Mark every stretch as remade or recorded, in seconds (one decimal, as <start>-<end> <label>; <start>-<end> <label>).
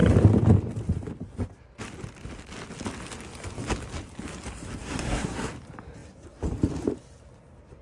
0.0-4.8 recorded; 4.8-5.5 remade; 5.5-7.8 recorded